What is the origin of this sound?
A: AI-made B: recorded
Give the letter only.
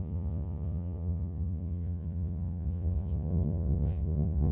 A